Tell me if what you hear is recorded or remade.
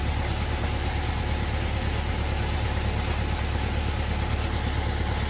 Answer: recorded